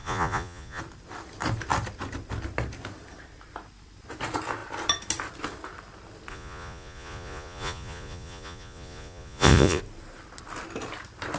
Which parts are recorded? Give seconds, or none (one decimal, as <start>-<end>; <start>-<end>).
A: 0.8-6.3; 9.8-11.4